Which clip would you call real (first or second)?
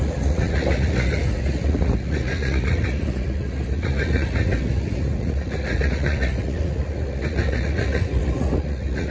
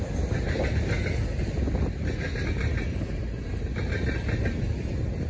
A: second